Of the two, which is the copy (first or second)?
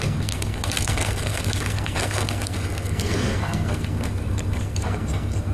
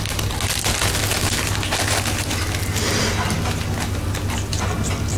first